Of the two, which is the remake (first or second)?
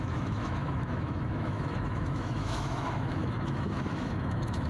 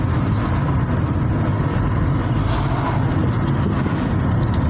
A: first